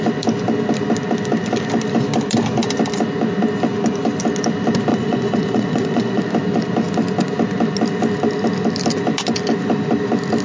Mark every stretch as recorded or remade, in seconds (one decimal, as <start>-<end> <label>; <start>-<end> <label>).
0.0-4.9 recorded; 4.9-6.2 remade; 6.2-10.4 recorded